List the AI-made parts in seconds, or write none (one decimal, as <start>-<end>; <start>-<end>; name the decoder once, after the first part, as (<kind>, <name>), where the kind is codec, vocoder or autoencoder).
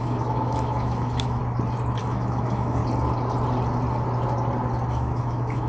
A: 0.0-1.4 (autoencoder, DAC-VAE); 2.0-2.8; 4.9-5.7